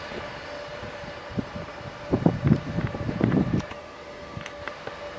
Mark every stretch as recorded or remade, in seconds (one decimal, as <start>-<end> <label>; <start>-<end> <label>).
0.0-0.7 recorded; 0.7-3.8 remade; 3.8-5.2 recorded